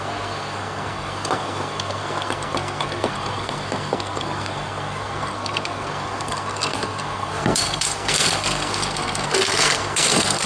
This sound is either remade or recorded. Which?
remade